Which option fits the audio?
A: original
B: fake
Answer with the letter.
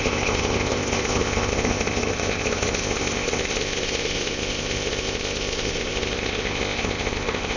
B